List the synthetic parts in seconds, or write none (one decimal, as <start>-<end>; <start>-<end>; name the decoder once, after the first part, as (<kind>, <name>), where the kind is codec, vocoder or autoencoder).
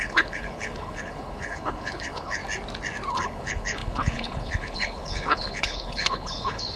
0.0-2.4 (codec, HILCodec); 3.1-6.8